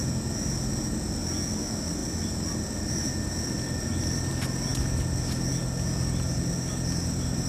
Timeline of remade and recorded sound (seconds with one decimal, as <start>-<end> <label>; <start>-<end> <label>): 0.0-2.0 recorded; 2.0-4.3 remade; 4.3-7.5 recorded